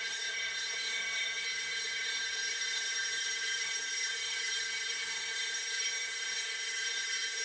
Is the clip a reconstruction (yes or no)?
yes